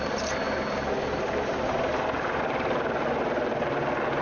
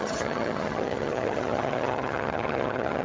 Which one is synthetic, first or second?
second